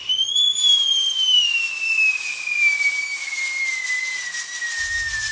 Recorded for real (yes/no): yes